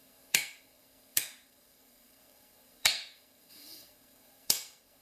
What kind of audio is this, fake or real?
fake